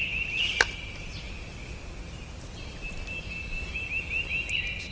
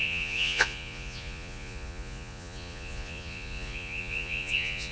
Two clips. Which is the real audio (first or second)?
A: first